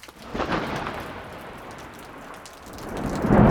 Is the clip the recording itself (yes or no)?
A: no